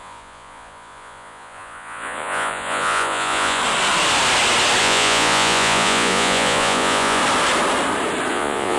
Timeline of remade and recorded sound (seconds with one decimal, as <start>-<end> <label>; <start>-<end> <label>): 0.0-3.6 remade; 3.6-4.8 recorded; 4.8-7.2 remade; 7.2-8.3 recorded; 8.3-8.8 remade